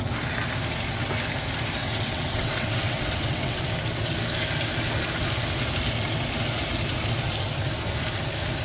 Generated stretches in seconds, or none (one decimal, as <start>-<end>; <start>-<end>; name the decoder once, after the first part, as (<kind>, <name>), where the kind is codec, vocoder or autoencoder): 1.8-3.7 (vocoder, WaveNeXt)